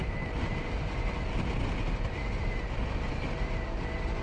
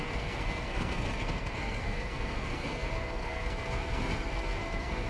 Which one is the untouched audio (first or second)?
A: first